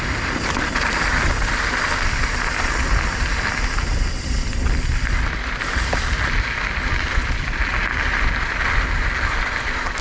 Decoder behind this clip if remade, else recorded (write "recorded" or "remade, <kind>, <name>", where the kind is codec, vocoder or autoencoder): recorded